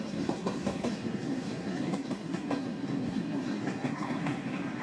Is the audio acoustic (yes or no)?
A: no